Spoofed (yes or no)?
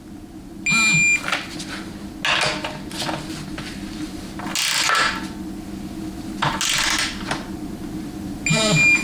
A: no